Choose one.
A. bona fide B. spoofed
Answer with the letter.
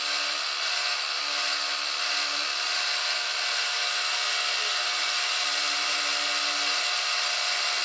A